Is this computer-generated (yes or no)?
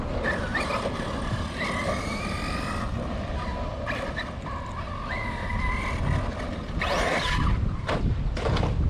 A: no